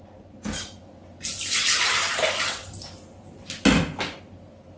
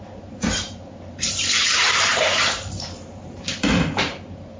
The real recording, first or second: first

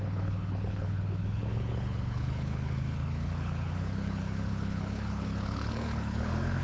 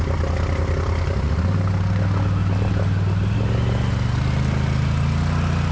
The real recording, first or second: second